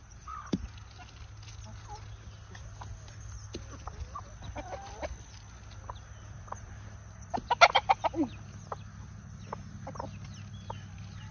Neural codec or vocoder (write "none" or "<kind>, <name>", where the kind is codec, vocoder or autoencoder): none